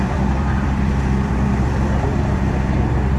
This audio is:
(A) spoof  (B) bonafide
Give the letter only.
A